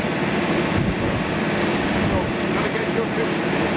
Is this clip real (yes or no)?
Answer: yes